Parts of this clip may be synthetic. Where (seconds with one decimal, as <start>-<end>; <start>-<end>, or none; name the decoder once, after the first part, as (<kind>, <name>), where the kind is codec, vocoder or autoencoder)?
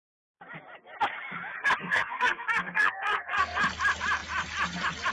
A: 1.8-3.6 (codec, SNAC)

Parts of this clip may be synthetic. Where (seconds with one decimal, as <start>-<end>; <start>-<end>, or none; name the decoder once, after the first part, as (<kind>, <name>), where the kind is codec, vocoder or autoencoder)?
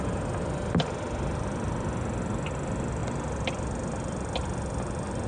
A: none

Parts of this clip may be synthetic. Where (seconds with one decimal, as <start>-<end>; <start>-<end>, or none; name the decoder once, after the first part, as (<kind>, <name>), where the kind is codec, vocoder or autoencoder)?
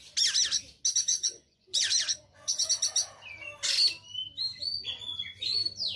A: 1.1-2.7 (vocoder, Vocos); 4.5-5.6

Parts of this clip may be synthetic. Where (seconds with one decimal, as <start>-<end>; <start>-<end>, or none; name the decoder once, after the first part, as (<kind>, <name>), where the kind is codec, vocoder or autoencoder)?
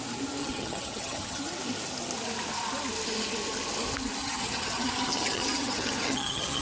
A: 0.4-1.4 (vocoder, HiFi-GAN); 4.2-6.6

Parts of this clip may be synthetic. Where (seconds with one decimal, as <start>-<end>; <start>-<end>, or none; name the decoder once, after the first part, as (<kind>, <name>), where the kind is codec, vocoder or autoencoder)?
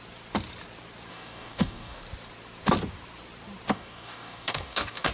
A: 1.1-2.0 (codec, DAC); 3.7-5.1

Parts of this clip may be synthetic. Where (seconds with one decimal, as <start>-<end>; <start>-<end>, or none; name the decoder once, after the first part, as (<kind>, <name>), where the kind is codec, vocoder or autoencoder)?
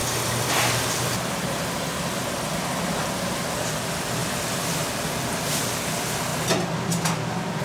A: 0.0-6.3 (vocoder, BigVGAN v2)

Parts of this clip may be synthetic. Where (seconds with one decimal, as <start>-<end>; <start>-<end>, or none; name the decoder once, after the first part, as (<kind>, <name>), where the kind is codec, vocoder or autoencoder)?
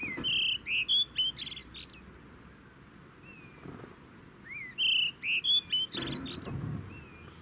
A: none